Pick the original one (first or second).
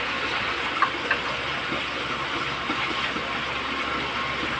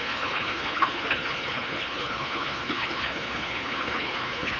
first